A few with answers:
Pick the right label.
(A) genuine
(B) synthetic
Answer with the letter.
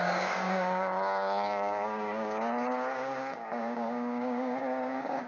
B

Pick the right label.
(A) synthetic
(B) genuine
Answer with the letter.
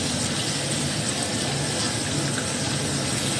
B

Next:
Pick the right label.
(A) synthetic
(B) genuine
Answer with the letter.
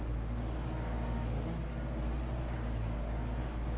B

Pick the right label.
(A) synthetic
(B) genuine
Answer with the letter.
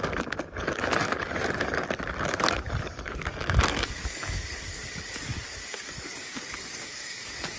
A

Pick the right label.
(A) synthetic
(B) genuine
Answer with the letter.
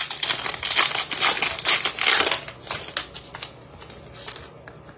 B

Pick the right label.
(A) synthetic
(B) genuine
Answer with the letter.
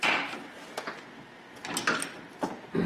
B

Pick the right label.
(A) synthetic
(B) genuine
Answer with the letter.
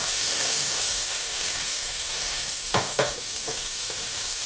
A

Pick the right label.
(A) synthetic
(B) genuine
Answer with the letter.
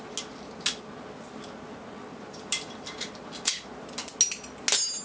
B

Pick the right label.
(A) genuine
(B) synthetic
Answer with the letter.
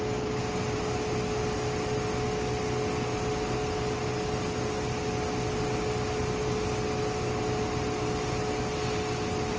A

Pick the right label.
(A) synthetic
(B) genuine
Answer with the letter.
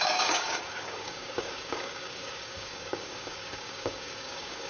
A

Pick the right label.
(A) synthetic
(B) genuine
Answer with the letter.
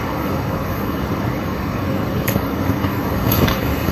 A